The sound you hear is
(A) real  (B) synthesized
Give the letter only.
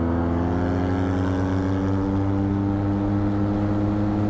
A